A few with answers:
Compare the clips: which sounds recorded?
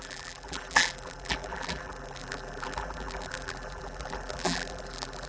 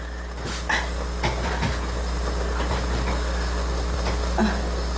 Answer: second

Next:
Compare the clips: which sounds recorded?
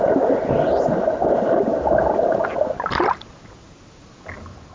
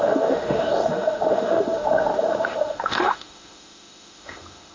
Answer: first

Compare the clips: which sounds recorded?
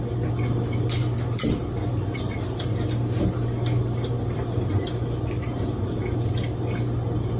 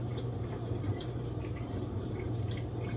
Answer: first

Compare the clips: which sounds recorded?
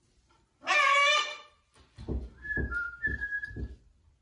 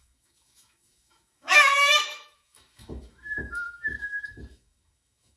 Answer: first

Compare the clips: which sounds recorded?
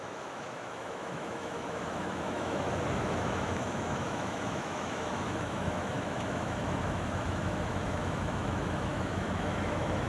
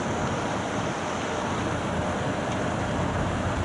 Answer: second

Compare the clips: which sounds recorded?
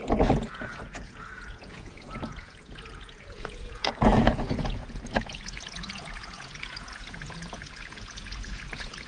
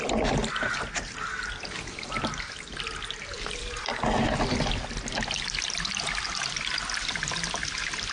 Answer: second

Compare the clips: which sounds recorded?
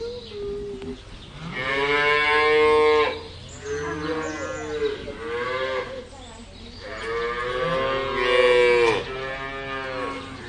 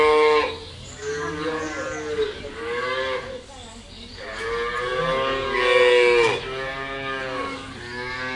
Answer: first